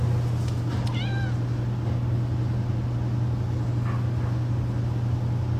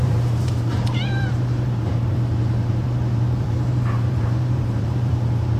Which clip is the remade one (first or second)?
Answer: second